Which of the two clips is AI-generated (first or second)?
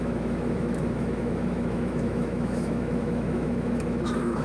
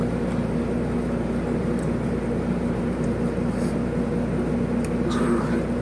first